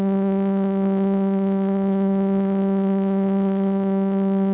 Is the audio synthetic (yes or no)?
yes